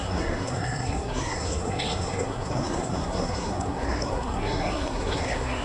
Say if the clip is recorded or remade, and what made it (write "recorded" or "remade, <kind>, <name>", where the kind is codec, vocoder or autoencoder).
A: remade, codec, SNAC